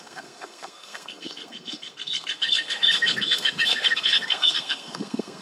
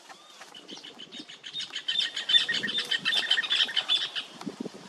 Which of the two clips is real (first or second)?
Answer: second